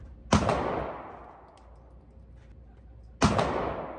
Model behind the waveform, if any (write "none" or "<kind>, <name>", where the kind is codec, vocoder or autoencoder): none